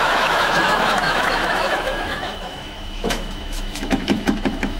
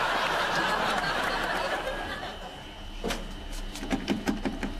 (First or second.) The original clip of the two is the second